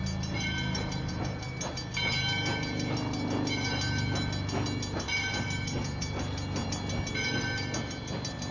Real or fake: real